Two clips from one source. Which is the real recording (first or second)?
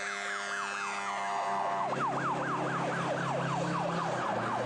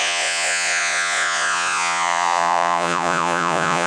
first